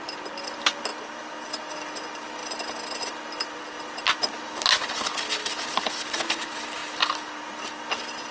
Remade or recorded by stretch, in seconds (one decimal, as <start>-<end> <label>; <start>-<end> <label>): 0.0-8.3 recorded